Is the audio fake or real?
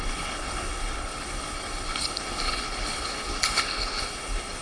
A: fake